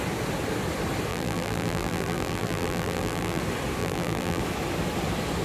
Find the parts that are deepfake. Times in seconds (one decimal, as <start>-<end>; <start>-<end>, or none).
1.1-3.4; 3.8-4.4